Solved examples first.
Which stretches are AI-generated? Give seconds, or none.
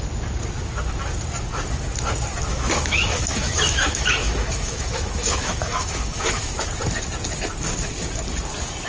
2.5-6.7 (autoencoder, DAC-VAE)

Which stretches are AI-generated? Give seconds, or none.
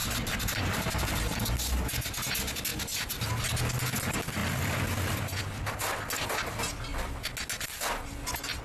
0.0-1.5 (vocoder, BigVGAN v2); 4.4-5.4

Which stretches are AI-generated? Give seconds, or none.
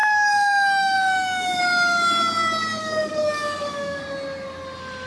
0.0-1.6 (codec, DAC); 2.8-4.0